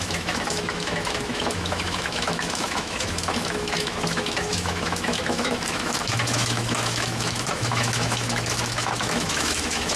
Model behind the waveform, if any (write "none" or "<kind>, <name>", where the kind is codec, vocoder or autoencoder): autoencoder, DAC-VAE